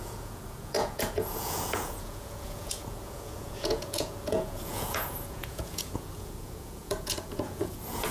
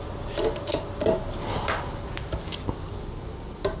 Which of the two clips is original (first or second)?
second